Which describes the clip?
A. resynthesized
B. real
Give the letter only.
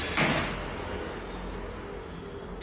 B